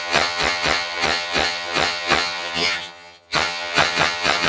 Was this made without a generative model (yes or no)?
no